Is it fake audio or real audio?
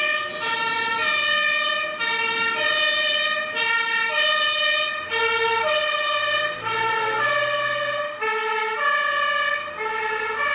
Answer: real